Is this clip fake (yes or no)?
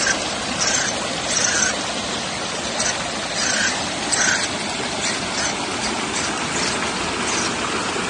no